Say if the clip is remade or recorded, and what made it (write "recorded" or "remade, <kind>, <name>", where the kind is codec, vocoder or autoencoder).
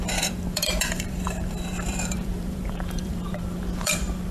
remade, vocoder, BigVGAN v2